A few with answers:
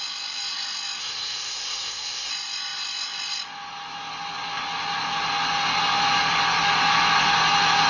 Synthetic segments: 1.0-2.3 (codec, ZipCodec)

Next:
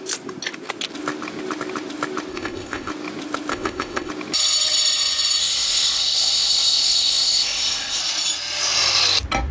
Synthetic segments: 2.3-2.9 (codec, ZipCodec); 3.5-4.1; 5.4-8.0

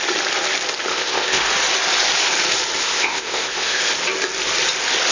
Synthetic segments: 0.9-1.4 (codec, ZipCodec); 2.8-3.9

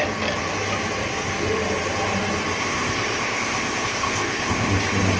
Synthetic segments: 2.6-4.7 (codec, ZipCodec)

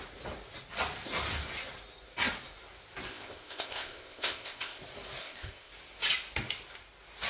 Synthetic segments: 3.1-4.8 (codec, ZipCodec); 5.2-5.7

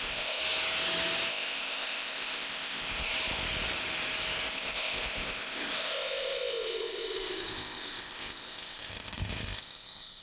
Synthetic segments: 0.0-0.4 (codec, ZipCodec); 1.3-3.1; 4.5-10.2